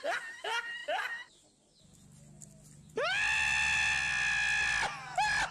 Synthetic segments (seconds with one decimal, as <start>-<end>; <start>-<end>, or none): none